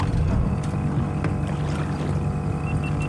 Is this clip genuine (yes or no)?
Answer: yes